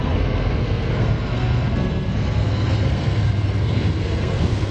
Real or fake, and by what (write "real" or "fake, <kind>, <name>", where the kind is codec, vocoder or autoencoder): fake, codec, SNAC